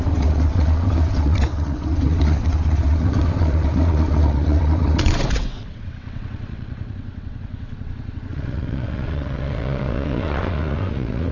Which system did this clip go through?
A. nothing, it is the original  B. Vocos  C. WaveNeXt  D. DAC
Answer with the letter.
C